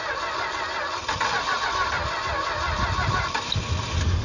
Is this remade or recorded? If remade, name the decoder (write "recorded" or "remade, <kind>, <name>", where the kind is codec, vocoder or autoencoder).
recorded